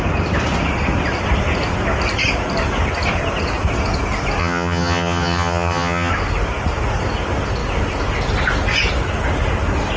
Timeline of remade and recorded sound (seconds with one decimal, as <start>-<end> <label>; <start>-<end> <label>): 0.0-4.4 recorded; 4.4-6.1 remade; 6.1-10.0 recorded